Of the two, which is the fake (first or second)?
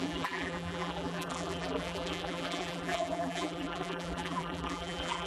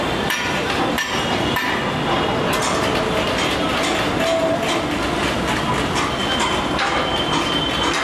first